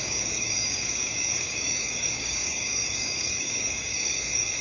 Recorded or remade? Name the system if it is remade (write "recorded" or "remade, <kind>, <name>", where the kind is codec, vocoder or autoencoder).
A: remade, codec, DAC